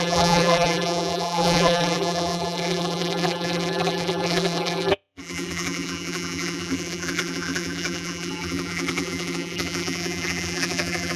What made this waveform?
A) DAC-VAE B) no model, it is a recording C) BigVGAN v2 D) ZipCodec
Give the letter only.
C